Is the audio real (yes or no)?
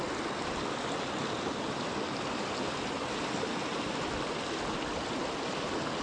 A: yes